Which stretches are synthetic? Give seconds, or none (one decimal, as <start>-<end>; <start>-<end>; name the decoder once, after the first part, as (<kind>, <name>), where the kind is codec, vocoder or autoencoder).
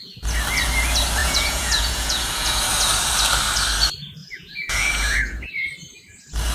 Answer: 1.2-2.6 (vocoder, Vocos); 4.2-5.5